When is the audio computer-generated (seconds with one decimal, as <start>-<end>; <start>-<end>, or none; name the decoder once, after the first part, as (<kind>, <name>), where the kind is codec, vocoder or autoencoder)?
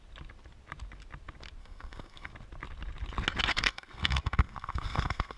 1.6-2.3 (codec, SNAC); 3.5-5.4